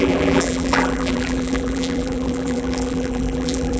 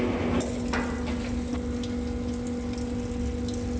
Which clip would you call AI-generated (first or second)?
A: first